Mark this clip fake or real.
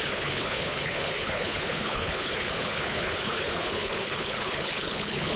fake